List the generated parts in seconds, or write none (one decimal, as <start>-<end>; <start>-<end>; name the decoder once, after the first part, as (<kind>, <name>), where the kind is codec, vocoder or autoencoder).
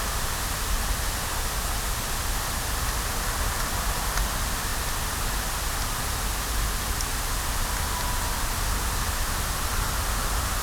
0.0-4.7 (vocoder, BigVGAN v2); 8.9-10.6